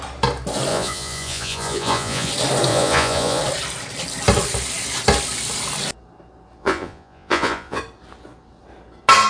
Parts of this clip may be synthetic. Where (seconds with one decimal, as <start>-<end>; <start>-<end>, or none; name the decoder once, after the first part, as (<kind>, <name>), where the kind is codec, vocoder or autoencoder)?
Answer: 0.7-2.3 (vocoder, Vocos); 2.7-3.4; 6.6-7.8